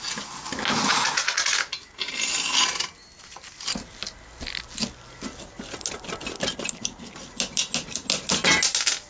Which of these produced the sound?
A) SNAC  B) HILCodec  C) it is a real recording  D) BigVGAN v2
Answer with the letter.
C